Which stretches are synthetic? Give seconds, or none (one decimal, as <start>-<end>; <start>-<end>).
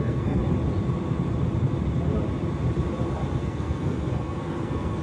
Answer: 0.0-0.4; 3.4-5.0